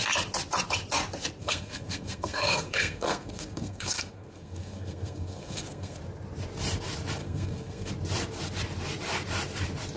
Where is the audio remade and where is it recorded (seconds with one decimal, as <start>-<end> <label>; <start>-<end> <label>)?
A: 0.0-1.4 recorded; 1.4-6.0 remade; 6.0-7.2 recorded; 7.2-7.9 remade; 7.9-10.0 recorded